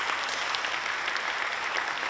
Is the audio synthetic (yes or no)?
no